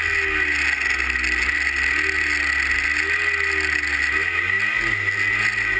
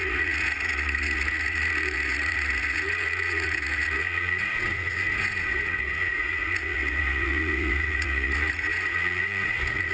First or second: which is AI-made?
second